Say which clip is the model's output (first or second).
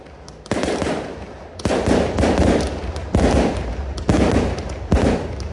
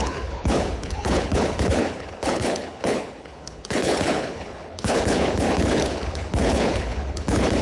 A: second